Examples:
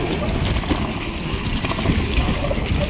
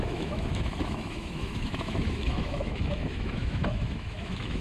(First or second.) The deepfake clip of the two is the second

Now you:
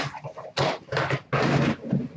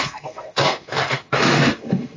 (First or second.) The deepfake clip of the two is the second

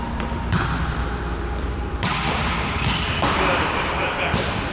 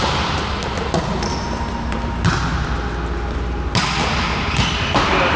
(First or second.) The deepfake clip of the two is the first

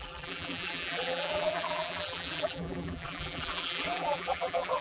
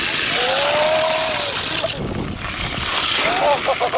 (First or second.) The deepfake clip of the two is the first